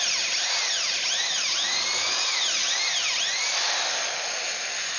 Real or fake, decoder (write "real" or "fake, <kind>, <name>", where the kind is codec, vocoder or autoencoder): real